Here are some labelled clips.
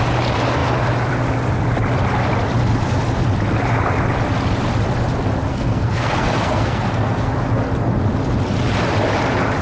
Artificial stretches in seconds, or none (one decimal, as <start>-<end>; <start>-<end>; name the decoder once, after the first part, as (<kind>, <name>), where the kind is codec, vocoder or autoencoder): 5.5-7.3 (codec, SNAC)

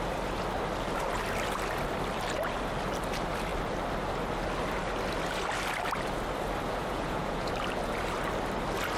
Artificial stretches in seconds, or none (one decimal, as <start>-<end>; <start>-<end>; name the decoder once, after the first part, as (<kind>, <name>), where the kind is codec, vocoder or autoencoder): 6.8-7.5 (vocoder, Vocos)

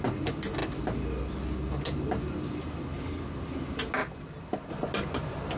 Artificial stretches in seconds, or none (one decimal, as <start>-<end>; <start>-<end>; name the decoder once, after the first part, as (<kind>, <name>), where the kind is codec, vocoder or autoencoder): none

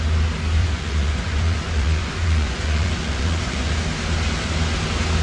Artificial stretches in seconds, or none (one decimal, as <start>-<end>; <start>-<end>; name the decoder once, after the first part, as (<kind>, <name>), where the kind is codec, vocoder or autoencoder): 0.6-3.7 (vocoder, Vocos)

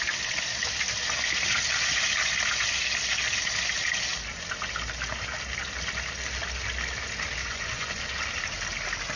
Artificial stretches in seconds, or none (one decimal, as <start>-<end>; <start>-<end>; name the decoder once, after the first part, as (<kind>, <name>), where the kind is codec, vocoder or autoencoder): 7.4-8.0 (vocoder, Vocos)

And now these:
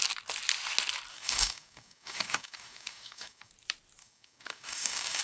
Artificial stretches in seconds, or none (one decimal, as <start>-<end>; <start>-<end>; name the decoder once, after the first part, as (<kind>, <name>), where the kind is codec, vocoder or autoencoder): 1.1-3.5 (codec, DAC); 4.0-5.2